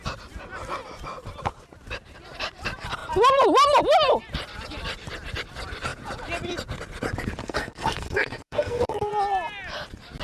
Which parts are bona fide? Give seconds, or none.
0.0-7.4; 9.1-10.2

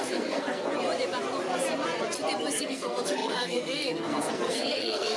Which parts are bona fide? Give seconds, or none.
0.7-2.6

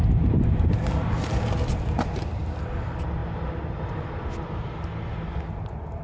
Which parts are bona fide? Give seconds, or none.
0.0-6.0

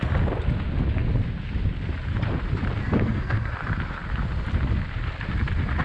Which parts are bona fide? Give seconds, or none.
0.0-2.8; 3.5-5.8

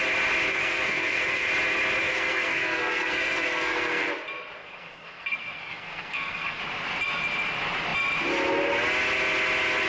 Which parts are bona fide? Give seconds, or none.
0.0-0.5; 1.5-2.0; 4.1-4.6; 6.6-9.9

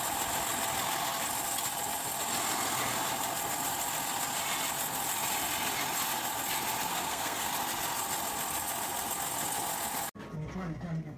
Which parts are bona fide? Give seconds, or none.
0.0-6.9; 7.5-11.2

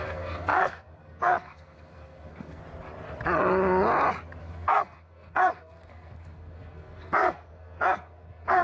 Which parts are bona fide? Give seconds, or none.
2.6-4.4

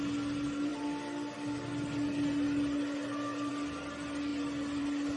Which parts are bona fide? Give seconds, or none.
0.0-5.2